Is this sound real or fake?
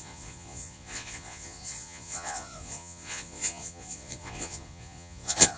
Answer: fake